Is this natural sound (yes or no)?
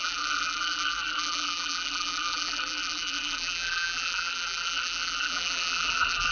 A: no